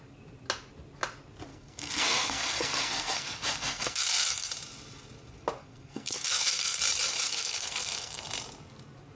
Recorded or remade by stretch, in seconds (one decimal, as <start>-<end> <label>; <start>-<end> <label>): 0.0-1.5 recorded; 1.5-4.5 remade; 4.5-5.6 recorded; 5.6-6.8 remade; 6.8-7.2 recorded; 7.2-8.2 remade; 8.2-9.2 recorded